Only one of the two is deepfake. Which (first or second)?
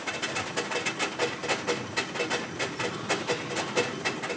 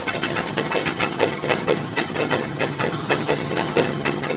second